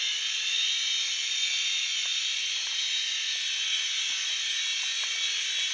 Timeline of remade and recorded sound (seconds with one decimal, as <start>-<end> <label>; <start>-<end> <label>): 0.0-5.7 recorded